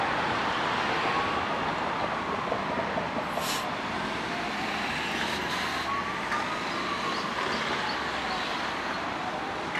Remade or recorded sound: recorded